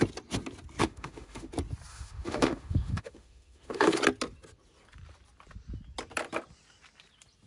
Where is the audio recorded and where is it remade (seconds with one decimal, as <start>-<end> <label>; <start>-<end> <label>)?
0.0-0.8 recorded; 0.8-1.5 remade; 1.5-1.9 recorded; 1.9-4.0 remade; 4.0-7.5 recorded